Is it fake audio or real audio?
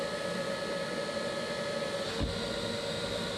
real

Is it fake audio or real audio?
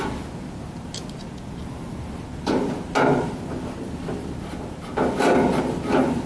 real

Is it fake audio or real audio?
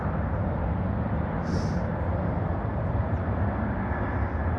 real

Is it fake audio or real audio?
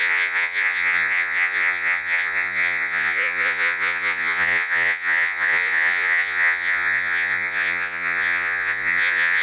fake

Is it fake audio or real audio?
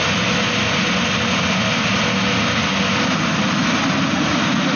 real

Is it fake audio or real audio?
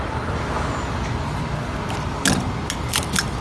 real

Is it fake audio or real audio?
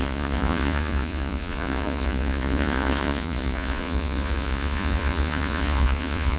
fake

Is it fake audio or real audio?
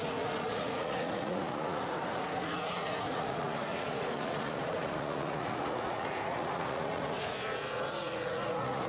fake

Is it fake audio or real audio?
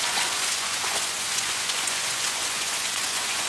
fake